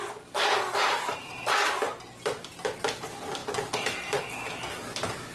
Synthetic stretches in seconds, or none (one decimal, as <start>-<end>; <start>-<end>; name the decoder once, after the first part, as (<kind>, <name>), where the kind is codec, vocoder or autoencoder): 3.4-4.2 (vocoder, BigVGAN v2)